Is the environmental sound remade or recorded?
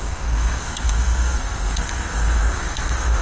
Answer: remade